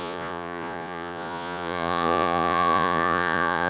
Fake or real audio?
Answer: fake